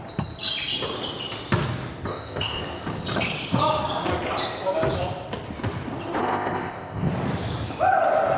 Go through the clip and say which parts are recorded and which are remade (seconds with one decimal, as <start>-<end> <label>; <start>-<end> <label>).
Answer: 0.0-2.1 recorded; 2.1-2.6 remade; 2.6-6.2 recorded; 6.2-7.1 remade; 7.1-8.4 recorded